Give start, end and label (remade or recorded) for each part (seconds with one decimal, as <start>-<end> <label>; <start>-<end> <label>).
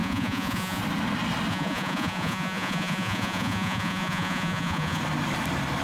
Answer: 0.0-0.8 remade; 0.8-1.5 recorded; 1.5-5.0 remade; 5.0-5.8 recorded